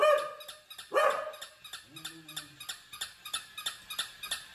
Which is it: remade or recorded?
recorded